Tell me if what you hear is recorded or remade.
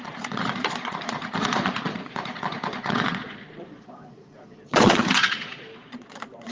remade